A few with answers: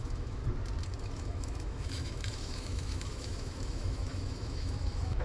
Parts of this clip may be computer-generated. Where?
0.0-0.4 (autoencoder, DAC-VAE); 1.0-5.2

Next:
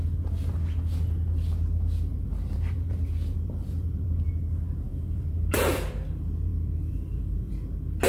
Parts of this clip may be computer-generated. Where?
2.1-4.3 (vocoder, BigVGAN v2); 4.9-5.9; 6.5-7.5